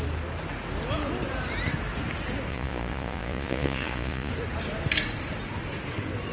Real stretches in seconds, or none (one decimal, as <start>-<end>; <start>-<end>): 0.0-2.5; 4.3-6.3